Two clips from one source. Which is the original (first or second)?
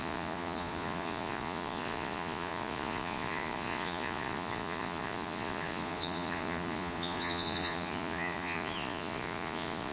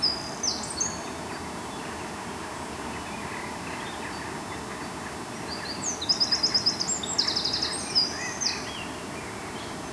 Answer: second